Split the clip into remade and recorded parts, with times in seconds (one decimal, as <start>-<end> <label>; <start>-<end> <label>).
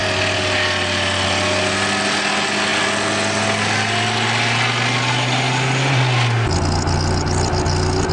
0.0-8.1 recorded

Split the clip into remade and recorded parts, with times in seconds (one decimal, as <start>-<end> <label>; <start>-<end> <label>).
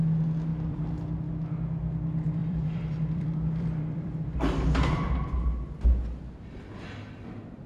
0.0-0.5 recorded; 0.5-1.2 remade; 1.2-2.4 recorded; 2.4-4.5 remade; 4.5-7.7 recorded